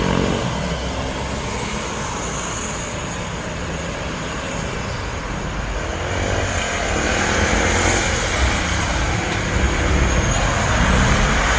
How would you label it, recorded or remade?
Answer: recorded